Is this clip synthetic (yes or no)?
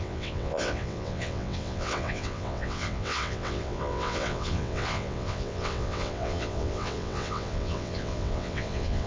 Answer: yes